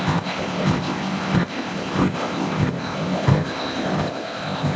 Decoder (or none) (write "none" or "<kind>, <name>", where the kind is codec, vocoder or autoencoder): codec, ZipCodec